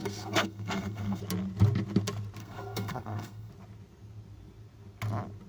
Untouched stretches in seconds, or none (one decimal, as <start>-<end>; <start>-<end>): 1.2-2.4; 3.5-5.5